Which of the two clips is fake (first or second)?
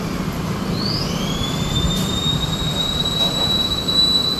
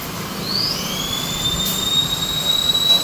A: first